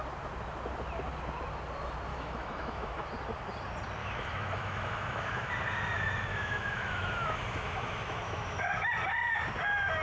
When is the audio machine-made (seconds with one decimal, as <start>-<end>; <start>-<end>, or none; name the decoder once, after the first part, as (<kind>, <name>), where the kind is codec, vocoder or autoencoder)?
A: 2.1-3.1 (autoencoder, DAC-VAE); 4.0-5.5; 6.3-8.9